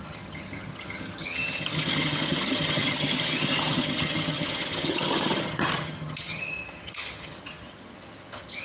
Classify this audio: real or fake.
fake